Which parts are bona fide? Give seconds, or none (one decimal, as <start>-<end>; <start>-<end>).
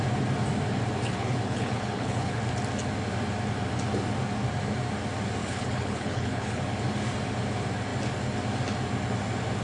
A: 0.0-1.1; 2.4-5.4; 6.6-9.6